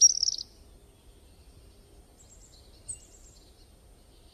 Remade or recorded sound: recorded